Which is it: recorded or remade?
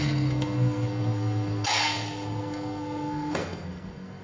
remade